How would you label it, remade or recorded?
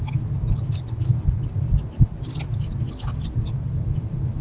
recorded